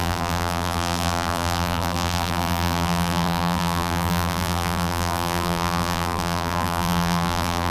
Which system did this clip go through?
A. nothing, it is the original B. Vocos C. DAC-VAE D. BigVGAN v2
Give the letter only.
D